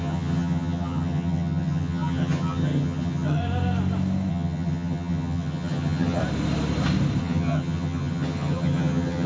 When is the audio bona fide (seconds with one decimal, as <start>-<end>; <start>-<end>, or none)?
3.4-4.3; 6.2-7.2